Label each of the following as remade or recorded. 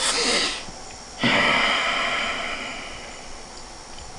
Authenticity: recorded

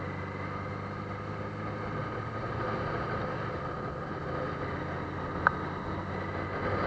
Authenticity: recorded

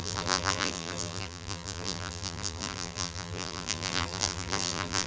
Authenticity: remade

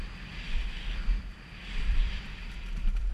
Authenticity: remade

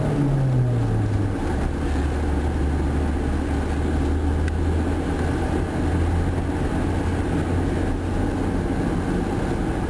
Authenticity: recorded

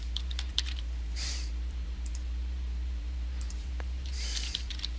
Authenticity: remade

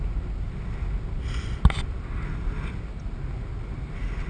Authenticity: recorded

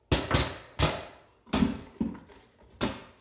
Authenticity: recorded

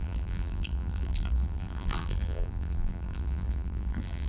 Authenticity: remade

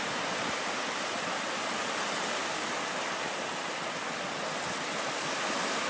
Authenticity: recorded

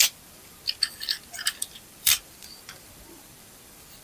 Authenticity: remade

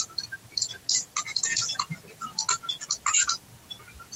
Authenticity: recorded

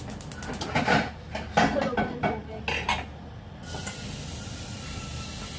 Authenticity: recorded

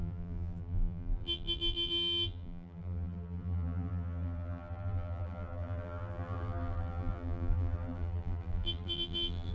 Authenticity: remade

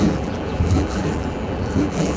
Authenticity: remade